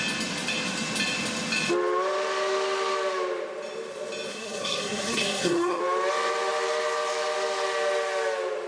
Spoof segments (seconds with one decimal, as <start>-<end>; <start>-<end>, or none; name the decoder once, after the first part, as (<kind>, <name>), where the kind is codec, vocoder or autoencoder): 4.3-5.8 (codec, SNAC)